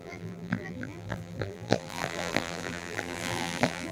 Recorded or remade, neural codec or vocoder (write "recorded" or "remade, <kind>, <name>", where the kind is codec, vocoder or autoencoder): remade, vocoder, BigVGAN v2